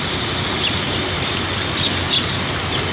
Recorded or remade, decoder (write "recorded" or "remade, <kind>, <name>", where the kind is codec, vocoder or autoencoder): recorded